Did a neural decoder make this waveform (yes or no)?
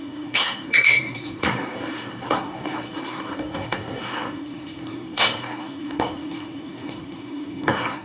yes